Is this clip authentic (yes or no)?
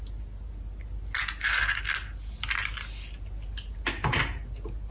yes